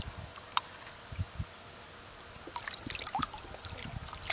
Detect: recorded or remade recorded